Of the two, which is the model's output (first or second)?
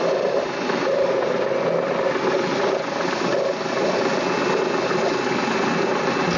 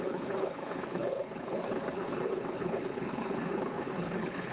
second